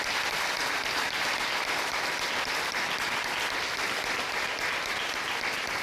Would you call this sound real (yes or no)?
no